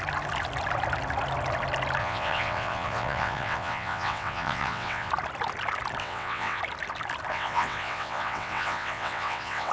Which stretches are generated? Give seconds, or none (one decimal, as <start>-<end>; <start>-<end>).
2.0-5.1; 6.0-6.6; 7.3-9.7